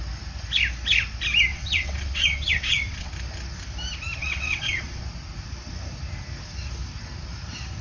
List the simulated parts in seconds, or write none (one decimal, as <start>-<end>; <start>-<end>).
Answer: 1.5-3.1; 4.2-5.0